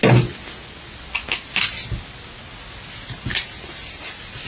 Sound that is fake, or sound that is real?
real